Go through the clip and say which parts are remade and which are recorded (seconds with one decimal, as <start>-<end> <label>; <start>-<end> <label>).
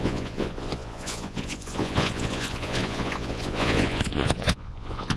0.0-5.2 remade